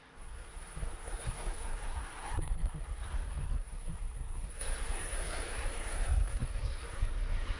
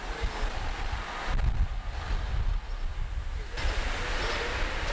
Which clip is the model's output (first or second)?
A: first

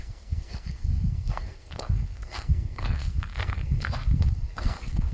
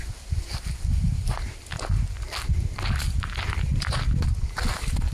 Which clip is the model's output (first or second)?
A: first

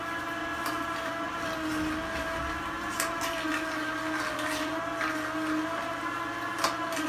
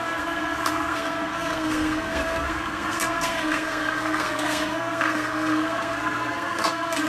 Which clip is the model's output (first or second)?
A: second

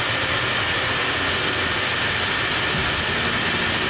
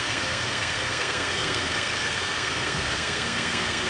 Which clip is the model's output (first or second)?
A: second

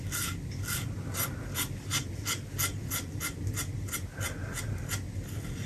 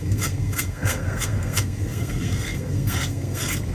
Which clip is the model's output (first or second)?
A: second